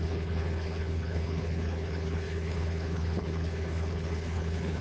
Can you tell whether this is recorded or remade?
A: remade